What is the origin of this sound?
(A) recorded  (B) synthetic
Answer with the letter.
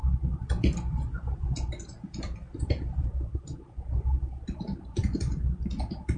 B